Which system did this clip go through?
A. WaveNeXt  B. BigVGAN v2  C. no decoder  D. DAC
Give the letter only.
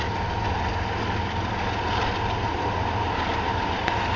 C